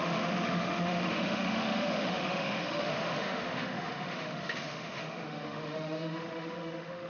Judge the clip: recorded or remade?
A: remade